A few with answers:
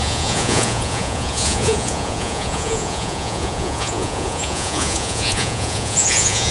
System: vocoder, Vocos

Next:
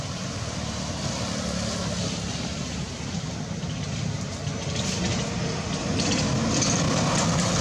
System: none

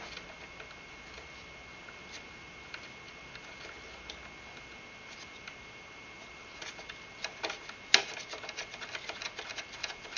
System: none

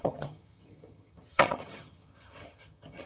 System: vocoder, HiFi-GAN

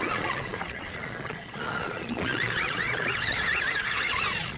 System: vocoder, Vocos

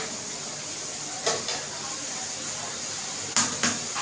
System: none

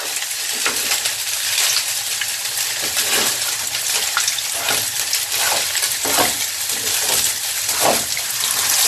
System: none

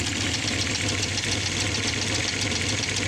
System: none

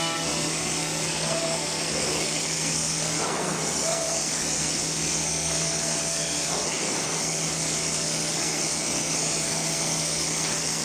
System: codec, SNAC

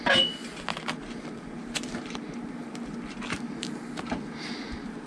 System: none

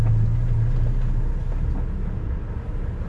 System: none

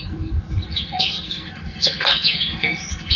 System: codec, SNAC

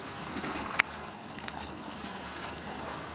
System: codec, SNAC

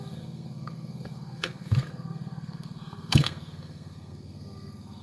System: codec, SNAC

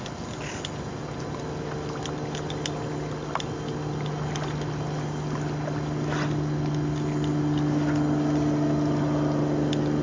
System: none